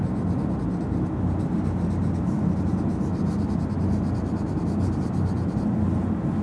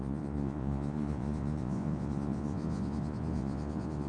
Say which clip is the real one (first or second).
first